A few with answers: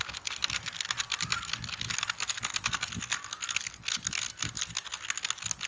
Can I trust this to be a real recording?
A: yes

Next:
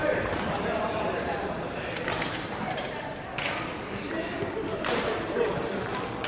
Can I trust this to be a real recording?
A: no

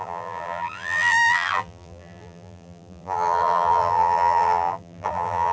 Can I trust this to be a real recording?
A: no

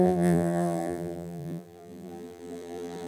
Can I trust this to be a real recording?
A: no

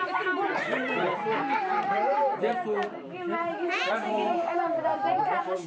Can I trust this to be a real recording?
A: no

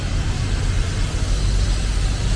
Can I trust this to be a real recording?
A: yes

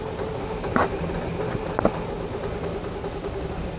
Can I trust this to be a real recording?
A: yes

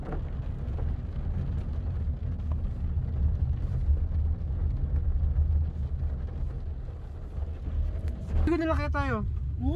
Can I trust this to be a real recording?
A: yes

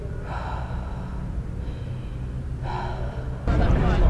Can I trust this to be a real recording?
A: yes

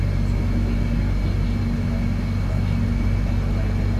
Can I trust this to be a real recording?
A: yes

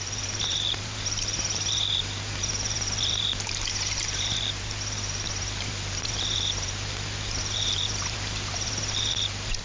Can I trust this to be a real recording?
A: no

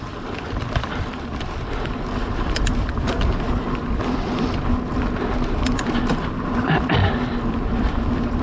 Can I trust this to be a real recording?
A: no